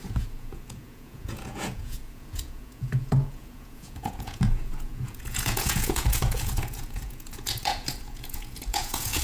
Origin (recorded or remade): remade